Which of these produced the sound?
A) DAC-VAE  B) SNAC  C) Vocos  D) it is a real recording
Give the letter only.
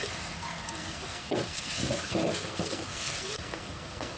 B